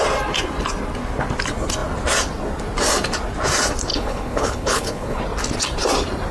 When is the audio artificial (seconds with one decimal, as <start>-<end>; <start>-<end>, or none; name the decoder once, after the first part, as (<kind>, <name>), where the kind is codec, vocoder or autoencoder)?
3.9-5.2 (codec, HILCodec)